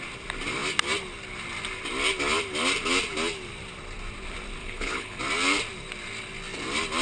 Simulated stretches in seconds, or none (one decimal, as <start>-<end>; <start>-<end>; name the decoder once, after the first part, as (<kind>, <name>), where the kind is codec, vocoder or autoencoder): 4.6-5.2 (codec, HILCodec)